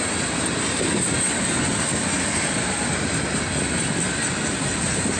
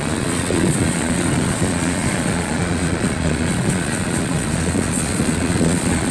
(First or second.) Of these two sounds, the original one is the first